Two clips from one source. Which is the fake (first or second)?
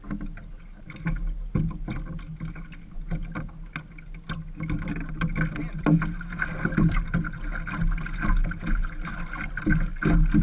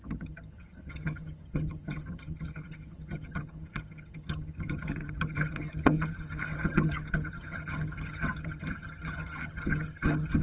second